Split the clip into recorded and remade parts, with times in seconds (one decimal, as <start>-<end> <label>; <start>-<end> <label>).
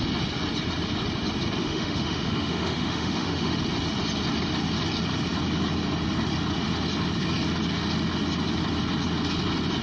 0.0-1.6 recorded; 1.6-3.6 remade; 3.6-9.8 recorded